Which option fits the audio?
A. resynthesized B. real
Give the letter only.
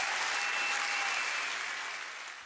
B